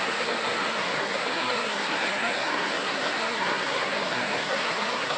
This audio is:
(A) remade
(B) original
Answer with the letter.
A